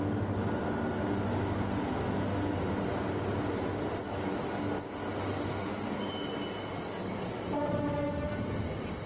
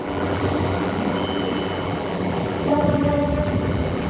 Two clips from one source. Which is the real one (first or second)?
first